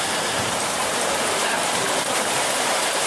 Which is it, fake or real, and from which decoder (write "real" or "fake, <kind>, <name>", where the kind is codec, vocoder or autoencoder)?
fake, vocoder, BigVGAN v2